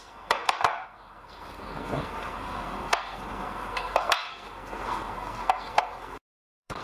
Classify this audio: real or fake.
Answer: fake